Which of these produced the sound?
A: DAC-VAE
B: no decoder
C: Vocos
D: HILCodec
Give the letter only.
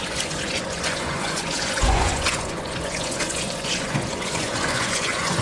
C